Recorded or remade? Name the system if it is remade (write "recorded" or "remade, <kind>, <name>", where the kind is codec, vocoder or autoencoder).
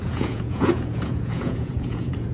remade, vocoder, Vocos